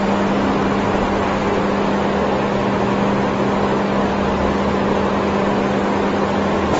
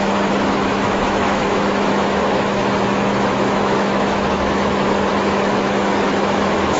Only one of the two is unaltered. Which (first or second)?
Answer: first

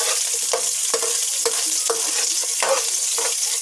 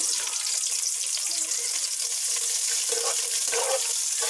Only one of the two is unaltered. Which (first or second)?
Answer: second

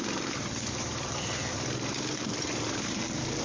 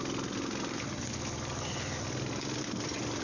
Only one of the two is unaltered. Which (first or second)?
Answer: second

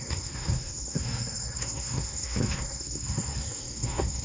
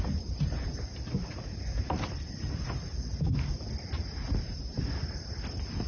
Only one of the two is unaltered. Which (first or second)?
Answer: second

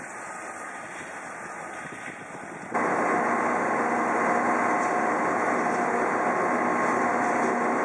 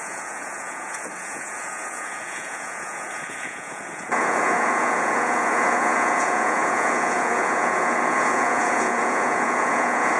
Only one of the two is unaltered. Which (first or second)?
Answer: first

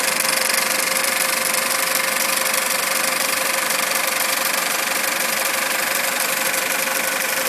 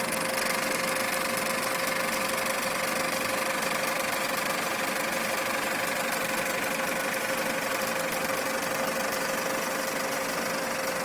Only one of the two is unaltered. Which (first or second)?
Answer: second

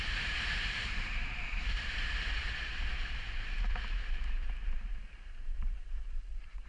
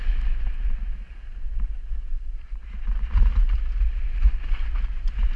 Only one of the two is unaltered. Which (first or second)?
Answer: second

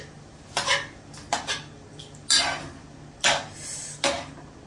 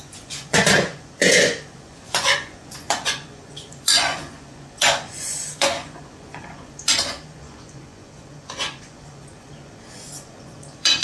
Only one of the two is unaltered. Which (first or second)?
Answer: first